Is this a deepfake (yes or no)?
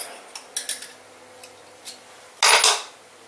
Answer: no